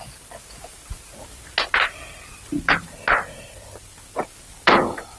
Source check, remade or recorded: recorded